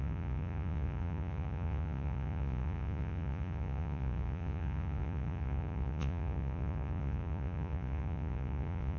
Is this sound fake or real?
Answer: fake